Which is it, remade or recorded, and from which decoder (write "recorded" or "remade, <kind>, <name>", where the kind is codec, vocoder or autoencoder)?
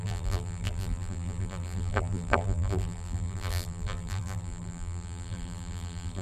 remade, vocoder, BigVGAN v2